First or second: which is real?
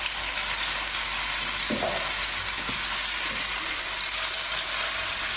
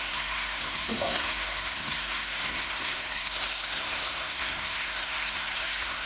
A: first